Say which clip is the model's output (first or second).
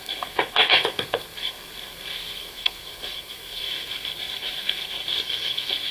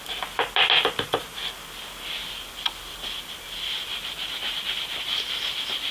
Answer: first